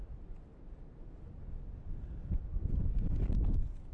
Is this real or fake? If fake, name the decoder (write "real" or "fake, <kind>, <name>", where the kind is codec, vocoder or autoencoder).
real